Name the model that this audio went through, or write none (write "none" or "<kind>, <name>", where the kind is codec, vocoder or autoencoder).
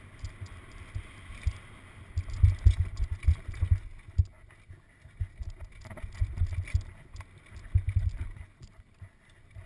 none